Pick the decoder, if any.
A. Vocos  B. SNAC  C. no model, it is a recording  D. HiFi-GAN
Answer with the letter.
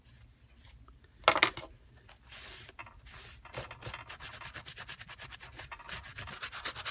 C